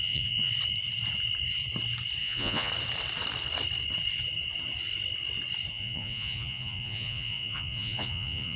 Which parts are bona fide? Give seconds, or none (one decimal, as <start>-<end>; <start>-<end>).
0.5-2.2; 2.7-5.7